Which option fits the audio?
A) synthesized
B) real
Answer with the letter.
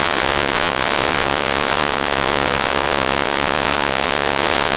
A